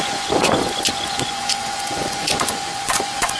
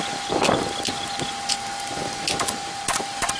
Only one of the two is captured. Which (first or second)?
second